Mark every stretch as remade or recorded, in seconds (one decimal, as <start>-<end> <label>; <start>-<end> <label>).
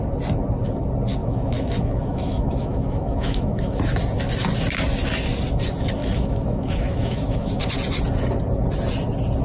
0.0-1.2 recorded; 1.2-3.8 remade; 3.8-6.0 recorded; 6.0-7.6 remade; 7.6-9.4 recorded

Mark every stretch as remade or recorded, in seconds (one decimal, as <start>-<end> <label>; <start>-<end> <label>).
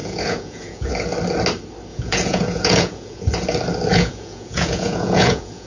0.0-0.9 remade; 0.9-1.9 recorded; 1.9-3.2 remade; 3.2-3.9 recorded; 3.9-5.7 remade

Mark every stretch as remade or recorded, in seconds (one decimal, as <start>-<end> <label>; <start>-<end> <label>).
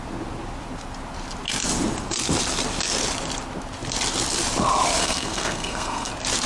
0.0-5.0 recorded; 5.0-6.1 remade; 6.1-6.5 recorded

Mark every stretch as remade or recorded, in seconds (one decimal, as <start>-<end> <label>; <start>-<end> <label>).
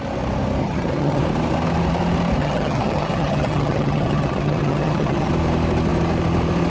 0.0-0.6 recorded; 0.6-1.2 remade; 1.2-2.4 recorded; 2.4-5.3 remade; 5.3-6.7 recorded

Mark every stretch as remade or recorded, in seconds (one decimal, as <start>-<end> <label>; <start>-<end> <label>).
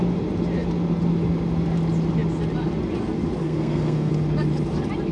0.0-3.4 recorded; 3.4-4.1 remade; 4.1-5.1 recorded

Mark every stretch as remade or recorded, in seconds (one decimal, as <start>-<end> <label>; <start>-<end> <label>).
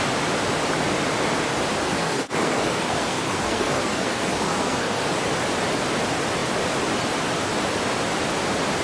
0.0-2.0 recorded; 2.0-5.0 remade; 5.0-8.8 recorded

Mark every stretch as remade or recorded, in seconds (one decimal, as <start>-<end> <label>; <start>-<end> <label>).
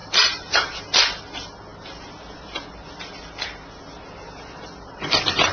0.0-0.8 remade; 0.8-5.5 recorded